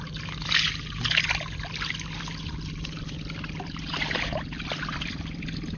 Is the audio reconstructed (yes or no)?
no